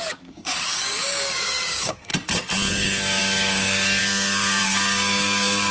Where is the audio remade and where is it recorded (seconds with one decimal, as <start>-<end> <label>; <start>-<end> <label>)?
0.0-2.1 remade; 2.1-2.7 recorded; 2.7-5.7 remade

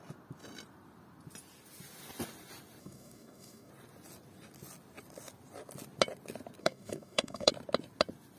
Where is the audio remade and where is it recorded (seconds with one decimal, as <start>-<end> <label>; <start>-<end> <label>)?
0.0-2.8 recorded; 2.8-3.7 remade; 3.7-6.6 recorded; 6.6-7.5 remade; 7.5-8.4 recorded

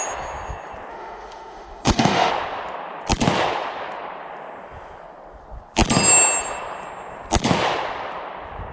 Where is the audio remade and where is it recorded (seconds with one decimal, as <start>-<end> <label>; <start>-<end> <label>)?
0.0-0.9 recorded; 0.9-2.3 remade; 2.3-8.7 recorded

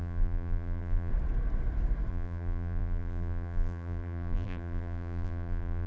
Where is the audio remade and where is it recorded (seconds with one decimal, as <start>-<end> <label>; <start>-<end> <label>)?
0.0-1.1 remade; 1.1-2.1 recorded; 2.1-5.9 remade

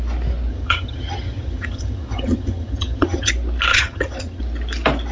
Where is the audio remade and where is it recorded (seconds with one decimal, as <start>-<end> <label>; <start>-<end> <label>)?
0.0-0.5 recorded; 0.5-3.3 remade; 3.3-3.7 recorded; 3.7-4.4 remade; 4.4-5.1 recorded

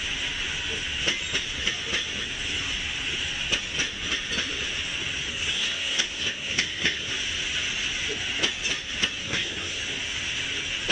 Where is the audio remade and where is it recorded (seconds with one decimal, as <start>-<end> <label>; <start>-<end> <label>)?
0.0-5.3 recorded; 5.3-7.1 remade; 7.1-9.2 recorded; 9.2-9.8 remade; 9.8-10.9 recorded

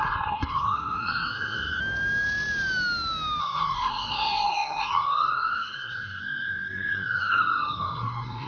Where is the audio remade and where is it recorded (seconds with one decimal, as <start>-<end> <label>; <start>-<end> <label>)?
0.0-1.8 remade; 1.8-3.4 recorded; 3.4-8.5 remade

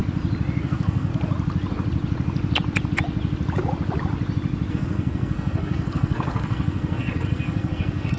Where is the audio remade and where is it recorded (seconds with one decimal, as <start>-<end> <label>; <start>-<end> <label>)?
0.0-0.6 recorded; 0.6-1.1 remade; 1.1-4.7 recorded; 4.7-8.2 remade